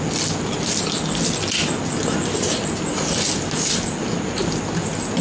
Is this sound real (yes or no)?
yes